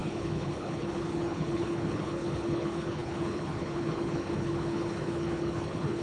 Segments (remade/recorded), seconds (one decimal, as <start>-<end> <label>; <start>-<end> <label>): 0.0-6.0 remade